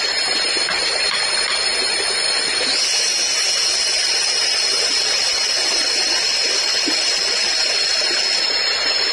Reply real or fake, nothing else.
real